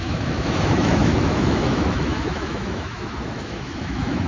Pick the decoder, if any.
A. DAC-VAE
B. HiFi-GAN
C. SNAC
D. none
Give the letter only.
A